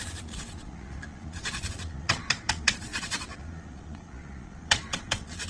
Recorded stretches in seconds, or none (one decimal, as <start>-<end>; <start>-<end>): none